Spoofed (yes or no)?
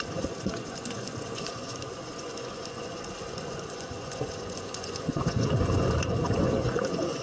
yes